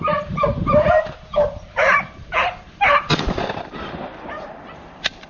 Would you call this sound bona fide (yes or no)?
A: no